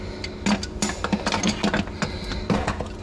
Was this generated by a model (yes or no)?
no